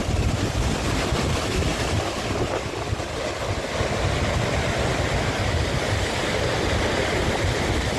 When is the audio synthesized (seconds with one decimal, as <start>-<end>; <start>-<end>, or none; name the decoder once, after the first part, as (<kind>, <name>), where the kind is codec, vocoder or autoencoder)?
none